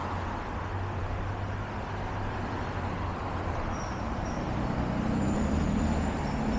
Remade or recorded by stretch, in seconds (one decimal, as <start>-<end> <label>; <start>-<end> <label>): 0.0-6.6 recorded